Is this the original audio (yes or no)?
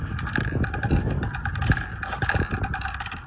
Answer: yes